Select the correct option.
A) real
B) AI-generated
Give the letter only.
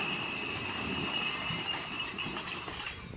A